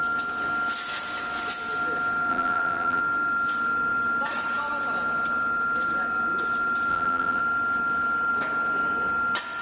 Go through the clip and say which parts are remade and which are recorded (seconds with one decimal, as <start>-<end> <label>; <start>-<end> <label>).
0.0-2.3 recorded; 2.3-3.0 remade; 3.0-6.9 recorded; 6.9-7.4 remade; 7.4-9.6 recorded